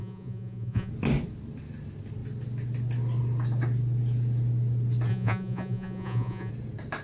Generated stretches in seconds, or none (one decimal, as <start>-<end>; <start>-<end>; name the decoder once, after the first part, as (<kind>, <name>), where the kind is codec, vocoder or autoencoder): 0.0-0.9 (vocoder, Vocos); 5.1-6.5